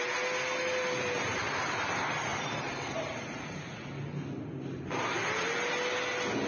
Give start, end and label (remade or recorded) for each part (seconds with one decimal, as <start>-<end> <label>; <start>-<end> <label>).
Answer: 0.0-6.5 recorded